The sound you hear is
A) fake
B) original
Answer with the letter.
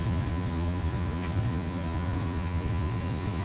A